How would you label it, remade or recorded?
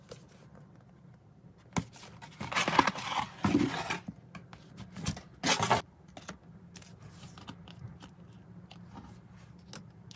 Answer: recorded